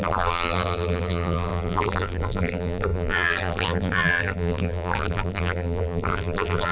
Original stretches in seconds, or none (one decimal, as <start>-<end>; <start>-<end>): none